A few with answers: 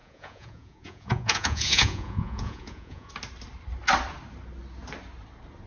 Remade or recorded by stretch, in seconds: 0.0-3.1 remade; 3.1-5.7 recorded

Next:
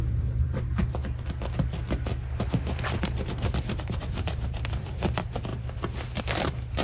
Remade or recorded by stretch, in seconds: 0.0-1.0 remade; 1.0-2.2 recorded; 2.2-5.5 remade; 5.5-6.2 recorded; 6.2-6.8 remade

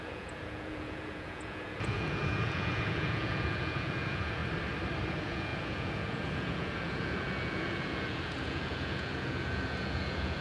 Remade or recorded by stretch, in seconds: 0.0-4.4 remade; 4.4-5.1 recorded; 5.1-10.4 remade